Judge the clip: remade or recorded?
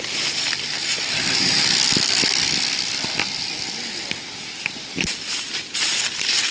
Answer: recorded